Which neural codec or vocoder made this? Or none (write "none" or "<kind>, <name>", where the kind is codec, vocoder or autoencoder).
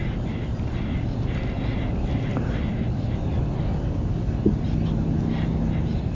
none